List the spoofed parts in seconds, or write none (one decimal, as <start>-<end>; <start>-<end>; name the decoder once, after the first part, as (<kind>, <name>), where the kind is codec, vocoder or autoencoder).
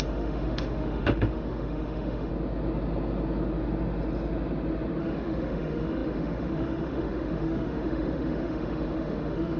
0.0-2.3 (autoencoder, DAC-VAE); 5.0-9.6